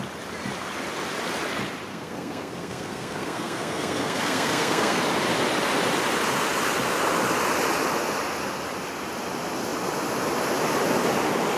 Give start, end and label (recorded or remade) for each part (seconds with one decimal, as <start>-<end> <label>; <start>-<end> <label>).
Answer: 0.0-1.9 recorded; 1.9-5.0 remade; 5.0-11.6 recorded